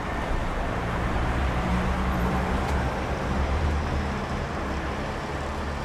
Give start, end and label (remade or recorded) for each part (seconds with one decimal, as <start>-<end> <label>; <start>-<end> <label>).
0.0-0.4 recorded; 0.4-3.7 remade; 3.7-5.8 recorded

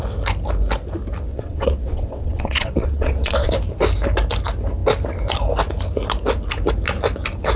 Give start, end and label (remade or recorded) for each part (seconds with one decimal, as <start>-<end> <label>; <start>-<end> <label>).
0.0-1.3 recorded; 1.3-3.5 remade; 3.5-7.6 recorded

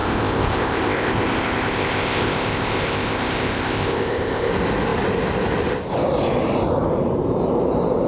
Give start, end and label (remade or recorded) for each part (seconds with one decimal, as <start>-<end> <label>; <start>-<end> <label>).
0.0-4.5 remade; 4.5-8.1 recorded

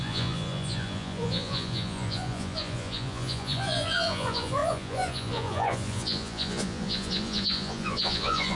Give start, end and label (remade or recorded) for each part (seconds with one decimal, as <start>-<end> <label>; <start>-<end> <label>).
0.0-8.5 remade